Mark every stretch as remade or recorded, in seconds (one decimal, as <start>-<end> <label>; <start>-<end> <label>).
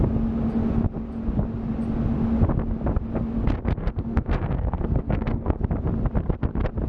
0.0-3.8 recorded; 3.8-5.6 remade; 5.6-6.9 recorded